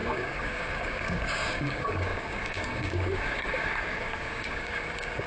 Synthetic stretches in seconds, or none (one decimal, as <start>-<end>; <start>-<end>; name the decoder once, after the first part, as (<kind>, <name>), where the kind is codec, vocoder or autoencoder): 0.0-5.3 (codec, DAC)